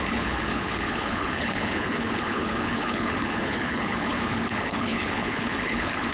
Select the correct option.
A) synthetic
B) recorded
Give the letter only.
A